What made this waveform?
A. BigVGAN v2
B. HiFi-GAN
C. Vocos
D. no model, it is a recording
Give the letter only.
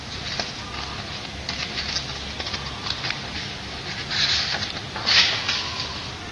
D